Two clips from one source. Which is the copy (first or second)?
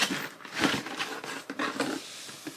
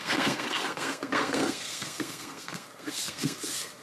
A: second